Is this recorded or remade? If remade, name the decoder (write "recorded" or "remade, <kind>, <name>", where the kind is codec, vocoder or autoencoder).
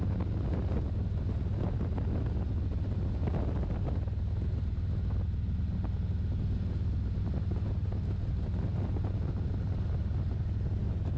recorded